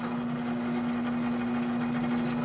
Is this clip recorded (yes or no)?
yes